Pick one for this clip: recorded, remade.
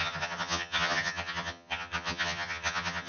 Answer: remade